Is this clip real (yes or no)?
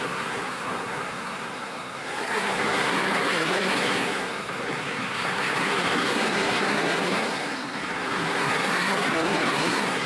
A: no